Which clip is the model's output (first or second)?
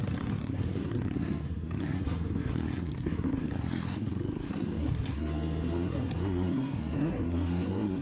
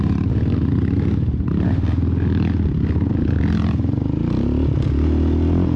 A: first